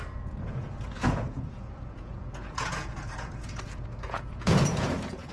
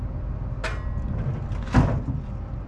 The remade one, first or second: first